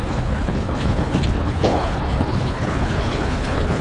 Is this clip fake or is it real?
fake